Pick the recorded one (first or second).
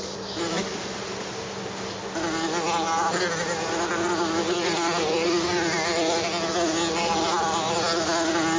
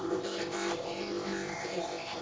first